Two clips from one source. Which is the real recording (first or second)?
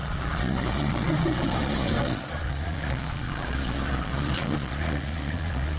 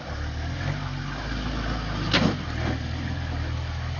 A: second